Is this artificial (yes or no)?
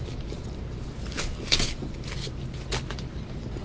no